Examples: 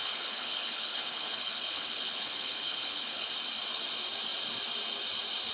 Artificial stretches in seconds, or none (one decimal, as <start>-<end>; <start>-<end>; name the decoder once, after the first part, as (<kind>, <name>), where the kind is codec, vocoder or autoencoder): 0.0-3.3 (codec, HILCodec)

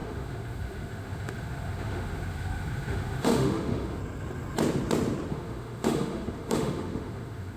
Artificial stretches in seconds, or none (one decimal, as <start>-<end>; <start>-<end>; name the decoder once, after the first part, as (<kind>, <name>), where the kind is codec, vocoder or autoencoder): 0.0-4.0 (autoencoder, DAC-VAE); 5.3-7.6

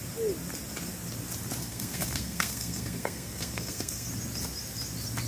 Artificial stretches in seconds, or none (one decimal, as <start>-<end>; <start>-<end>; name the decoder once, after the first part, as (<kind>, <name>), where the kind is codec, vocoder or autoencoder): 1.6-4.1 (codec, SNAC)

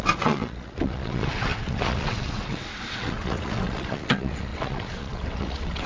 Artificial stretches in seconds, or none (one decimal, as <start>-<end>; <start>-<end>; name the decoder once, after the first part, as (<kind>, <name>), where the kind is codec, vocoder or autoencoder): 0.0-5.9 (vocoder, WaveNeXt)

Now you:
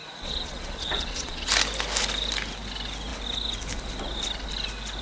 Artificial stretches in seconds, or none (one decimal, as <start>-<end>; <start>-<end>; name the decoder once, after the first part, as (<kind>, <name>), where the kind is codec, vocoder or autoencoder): 0.0-1.5 (vocoder, Vocos)

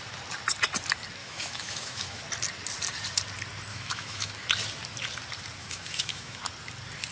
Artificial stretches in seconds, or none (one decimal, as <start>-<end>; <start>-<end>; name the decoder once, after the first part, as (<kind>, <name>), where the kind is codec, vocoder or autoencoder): 1.2-2.2 (autoencoder, DAC-VAE); 3.7-4.3; 5.6-6.4